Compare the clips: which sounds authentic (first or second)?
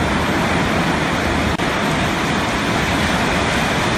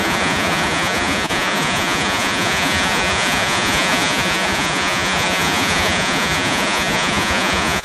first